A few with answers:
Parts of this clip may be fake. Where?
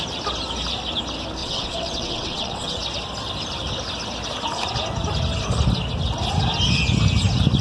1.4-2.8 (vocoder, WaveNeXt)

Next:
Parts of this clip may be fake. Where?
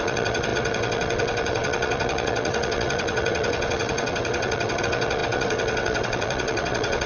0.0-7.1 (vocoder, WaveNeXt)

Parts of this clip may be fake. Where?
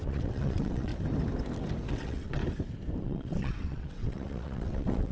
0.0-0.9 (vocoder, WaveNeXt); 1.9-2.4; 3.0-5.1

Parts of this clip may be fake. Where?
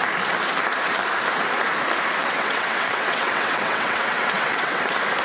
2.2-4.8 (vocoder, WaveNeXt)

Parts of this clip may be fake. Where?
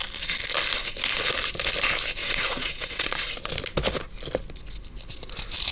2.2-3.5 (vocoder, WaveNeXt)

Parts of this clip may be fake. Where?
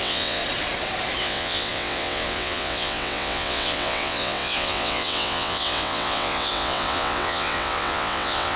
0.0-0.4 (vocoder, WaveNeXt); 1.2-8.6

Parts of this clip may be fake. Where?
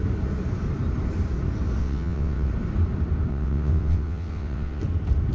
1.8-2.5 (vocoder, WaveNeXt); 3.3-4.8